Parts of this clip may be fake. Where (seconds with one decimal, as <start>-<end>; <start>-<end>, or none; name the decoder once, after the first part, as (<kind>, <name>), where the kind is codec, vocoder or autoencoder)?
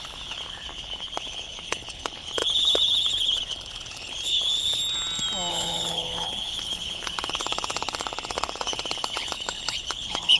0.0-4.8 (codec, HILCodec); 5.5-10.4